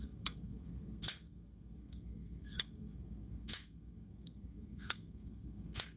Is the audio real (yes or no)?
no